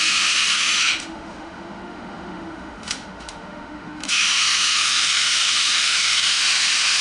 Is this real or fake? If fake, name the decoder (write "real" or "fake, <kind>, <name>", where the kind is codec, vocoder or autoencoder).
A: fake, autoencoder, DAC-VAE